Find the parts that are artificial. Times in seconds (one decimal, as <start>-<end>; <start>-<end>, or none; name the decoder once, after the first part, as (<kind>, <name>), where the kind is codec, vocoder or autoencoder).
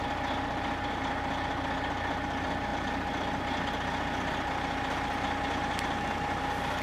none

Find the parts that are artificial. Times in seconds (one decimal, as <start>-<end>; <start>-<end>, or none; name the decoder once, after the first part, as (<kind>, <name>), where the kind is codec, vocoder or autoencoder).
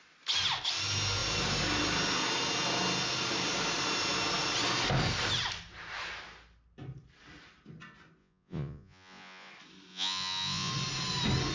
8.2-9.5 (vocoder, Vocos); 9.9-10.7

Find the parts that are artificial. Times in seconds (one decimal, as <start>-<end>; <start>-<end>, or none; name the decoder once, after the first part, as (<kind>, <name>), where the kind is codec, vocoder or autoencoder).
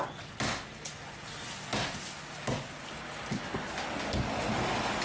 none